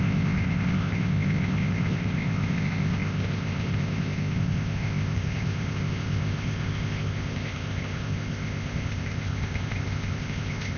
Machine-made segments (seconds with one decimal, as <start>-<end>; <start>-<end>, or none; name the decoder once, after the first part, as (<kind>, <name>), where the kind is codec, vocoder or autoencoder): 0.0-10.8 (codec, ZipCodec)